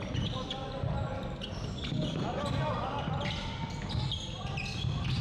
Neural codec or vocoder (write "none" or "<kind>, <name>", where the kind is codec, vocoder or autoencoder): none